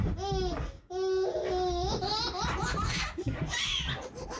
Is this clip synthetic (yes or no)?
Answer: no